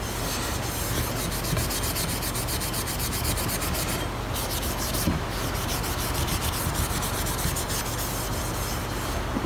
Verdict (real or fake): real